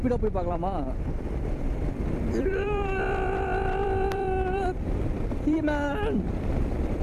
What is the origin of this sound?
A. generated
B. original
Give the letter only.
A